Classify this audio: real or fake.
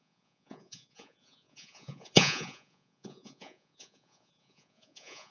fake